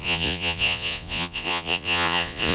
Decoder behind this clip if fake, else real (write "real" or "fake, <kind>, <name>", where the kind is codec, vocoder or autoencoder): fake, vocoder, Vocos